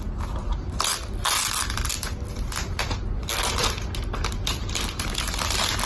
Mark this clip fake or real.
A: real